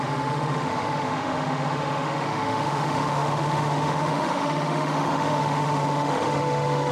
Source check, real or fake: fake